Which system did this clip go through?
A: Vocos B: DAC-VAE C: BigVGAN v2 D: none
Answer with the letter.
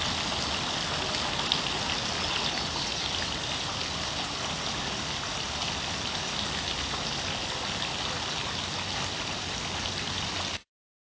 D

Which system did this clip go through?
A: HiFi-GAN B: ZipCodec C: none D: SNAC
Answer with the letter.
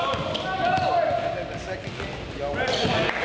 C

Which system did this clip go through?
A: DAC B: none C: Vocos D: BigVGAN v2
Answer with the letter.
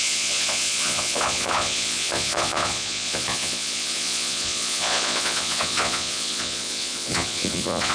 C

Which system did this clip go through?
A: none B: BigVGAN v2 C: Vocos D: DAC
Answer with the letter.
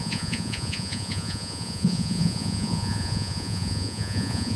C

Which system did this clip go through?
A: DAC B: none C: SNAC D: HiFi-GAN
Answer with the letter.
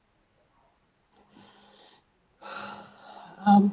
B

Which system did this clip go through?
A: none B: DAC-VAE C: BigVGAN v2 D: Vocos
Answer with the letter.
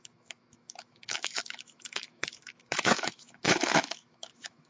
B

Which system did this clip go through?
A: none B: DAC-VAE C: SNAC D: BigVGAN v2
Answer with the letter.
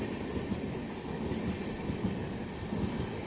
A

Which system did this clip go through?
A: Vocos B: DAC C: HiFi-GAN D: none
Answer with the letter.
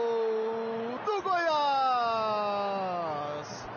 D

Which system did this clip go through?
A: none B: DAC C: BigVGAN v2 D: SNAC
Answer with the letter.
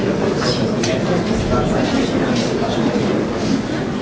A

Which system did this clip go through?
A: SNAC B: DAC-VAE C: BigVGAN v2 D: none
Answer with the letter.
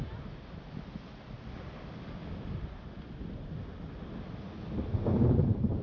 D